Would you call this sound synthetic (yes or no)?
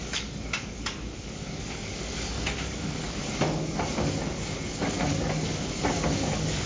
yes